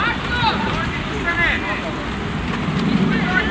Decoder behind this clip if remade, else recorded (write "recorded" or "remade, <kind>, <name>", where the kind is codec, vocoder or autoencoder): recorded